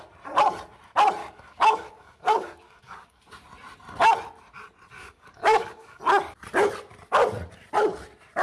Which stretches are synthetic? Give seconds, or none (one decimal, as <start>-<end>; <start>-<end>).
1.2-3.2; 4.9-6.0